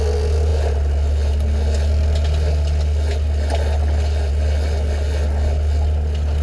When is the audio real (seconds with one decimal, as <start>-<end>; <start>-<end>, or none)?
0.0-6.4